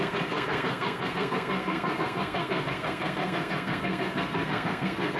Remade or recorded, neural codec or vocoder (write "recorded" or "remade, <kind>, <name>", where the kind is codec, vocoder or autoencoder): remade, codec, SNAC